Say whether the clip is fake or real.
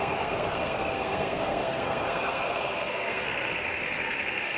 fake